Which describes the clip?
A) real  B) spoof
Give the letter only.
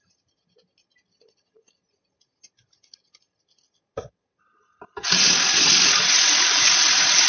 A